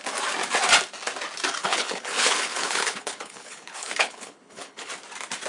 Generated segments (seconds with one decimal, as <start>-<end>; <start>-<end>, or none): 1.6-4.9